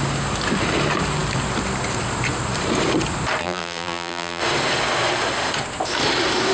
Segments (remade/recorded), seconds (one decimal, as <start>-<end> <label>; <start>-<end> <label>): 0.0-3.4 recorded; 3.4-4.4 remade; 4.4-6.5 recorded